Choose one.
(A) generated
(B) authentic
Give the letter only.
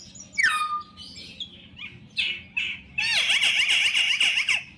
B